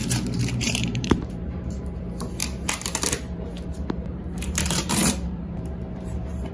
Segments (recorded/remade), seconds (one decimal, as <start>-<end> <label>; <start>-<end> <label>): 0.0-2.0 remade; 2.0-2.4 recorded; 2.4-6.5 remade